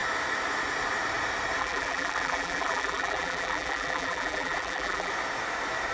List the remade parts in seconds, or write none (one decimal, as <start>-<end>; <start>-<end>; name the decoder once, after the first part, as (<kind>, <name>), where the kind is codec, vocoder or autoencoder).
1.6-5.1 (vocoder, BigVGAN v2)